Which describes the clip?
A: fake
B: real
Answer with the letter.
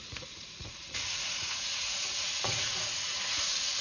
A